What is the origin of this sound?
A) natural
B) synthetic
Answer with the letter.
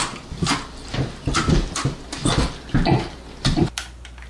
A